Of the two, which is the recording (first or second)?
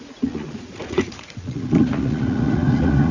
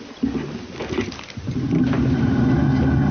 second